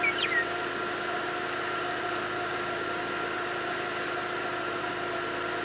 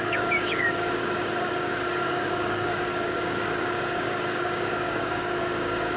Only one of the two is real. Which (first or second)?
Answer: first